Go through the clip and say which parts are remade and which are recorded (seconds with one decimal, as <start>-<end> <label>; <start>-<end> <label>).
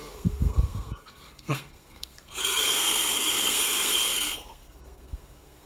0.0-5.7 remade